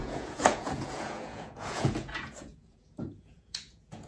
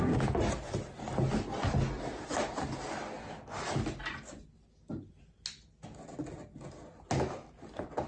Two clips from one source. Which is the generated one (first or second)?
first